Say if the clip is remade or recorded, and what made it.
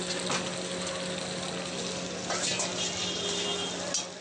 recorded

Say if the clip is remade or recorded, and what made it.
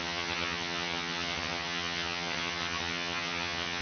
remade, vocoder, HiFi-GAN